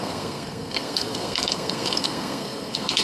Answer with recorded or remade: remade